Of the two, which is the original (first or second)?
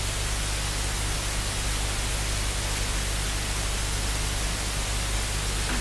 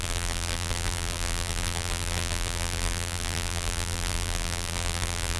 first